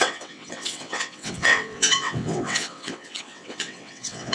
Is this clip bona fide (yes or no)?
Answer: no